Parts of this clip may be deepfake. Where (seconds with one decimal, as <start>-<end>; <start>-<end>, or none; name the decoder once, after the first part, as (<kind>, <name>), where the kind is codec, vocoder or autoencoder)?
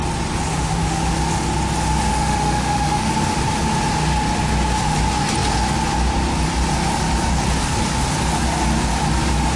0.5-1.1 (autoencoder, DAC-VAE); 2.1-3.1